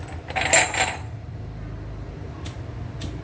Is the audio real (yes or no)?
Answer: yes